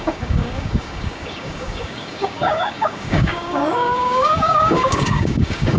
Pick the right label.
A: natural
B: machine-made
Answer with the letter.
B